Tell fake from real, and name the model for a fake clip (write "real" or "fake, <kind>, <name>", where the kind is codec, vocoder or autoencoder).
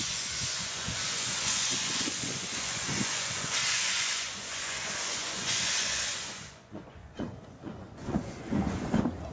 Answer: fake, vocoder, Vocos